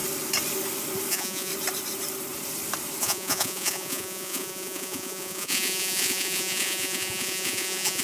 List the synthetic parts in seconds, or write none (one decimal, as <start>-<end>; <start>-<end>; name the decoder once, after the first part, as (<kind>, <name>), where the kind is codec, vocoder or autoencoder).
1.1-1.5 (vocoder, Vocos); 3.0-8.0